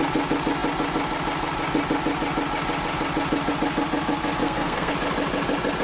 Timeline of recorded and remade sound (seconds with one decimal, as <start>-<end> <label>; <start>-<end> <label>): 0.0-4.4 recorded; 4.4-4.9 remade; 4.9-5.8 recorded